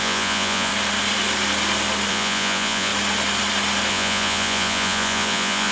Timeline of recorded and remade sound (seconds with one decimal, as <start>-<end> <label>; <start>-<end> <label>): 0.0-0.7 remade; 0.7-2.1 recorded; 2.1-2.9 remade; 2.9-3.9 recorded; 3.9-5.7 remade